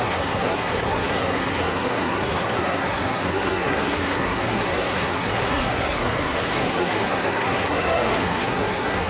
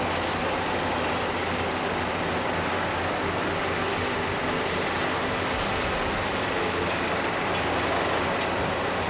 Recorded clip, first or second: second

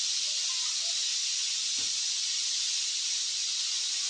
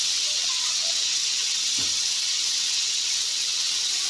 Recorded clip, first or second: first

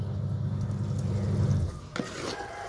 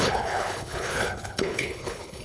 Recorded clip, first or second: first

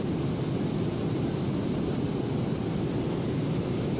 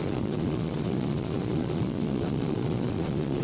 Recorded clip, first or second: first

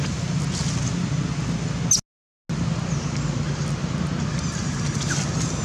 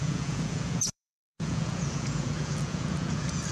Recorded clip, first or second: first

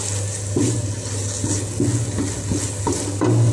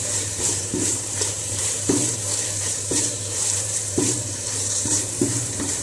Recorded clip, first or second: first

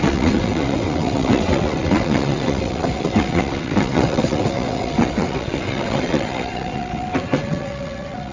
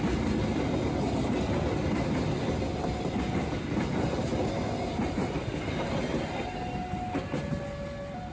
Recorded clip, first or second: second